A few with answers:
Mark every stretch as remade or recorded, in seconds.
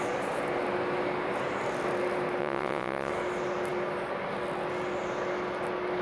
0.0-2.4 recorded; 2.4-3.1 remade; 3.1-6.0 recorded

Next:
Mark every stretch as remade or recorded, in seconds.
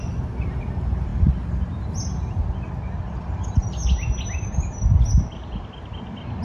0.0-6.4 recorded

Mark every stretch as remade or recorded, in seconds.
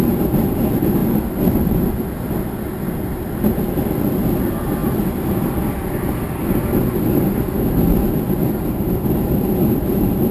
0.0-10.3 recorded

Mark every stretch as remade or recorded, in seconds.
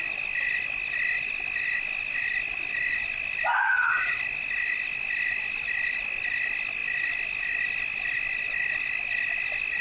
0.0-3.5 recorded; 3.5-4.1 remade; 4.1-9.8 recorded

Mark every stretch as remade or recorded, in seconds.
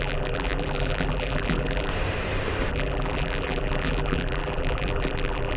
0.0-1.9 remade; 1.9-2.7 recorded; 2.7-5.6 remade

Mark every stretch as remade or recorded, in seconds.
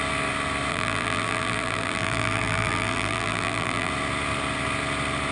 0.0-0.7 recorded; 0.7-3.9 remade; 3.9-5.3 recorded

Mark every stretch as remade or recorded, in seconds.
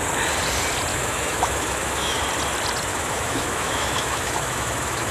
0.0-0.9 recorded; 0.9-2.2 remade; 2.2-2.9 recorded; 2.9-5.1 remade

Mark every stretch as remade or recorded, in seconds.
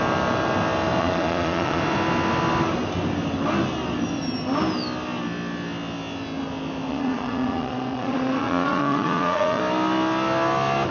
0.0-1.0 recorded; 1.0-1.8 remade; 1.8-6.9 recorded; 6.9-9.6 remade; 9.6-10.9 recorded